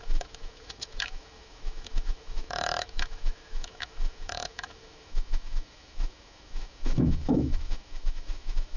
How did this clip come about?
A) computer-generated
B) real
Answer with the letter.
A